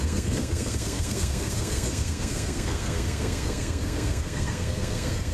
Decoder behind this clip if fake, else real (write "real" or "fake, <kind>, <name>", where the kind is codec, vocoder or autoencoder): fake, codec, SNAC